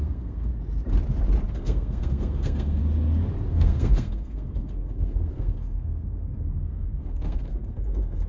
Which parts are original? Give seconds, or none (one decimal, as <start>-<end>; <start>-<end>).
0.5-1.5; 2.8-3.5